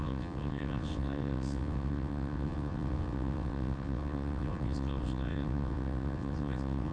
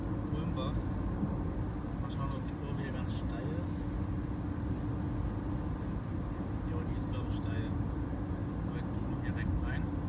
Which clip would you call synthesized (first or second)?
first